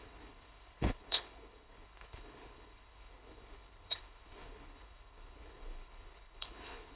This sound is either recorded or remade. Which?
remade